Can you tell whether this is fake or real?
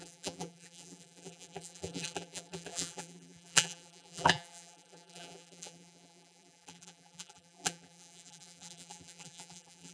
fake